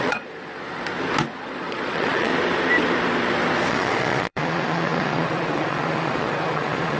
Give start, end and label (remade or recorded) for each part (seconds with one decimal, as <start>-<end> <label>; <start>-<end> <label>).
0.0-0.9 remade; 0.9-1.4 recorded; 1.4-2.3 remade; 2.3-3.7 recorded; 3.7-7.0 remade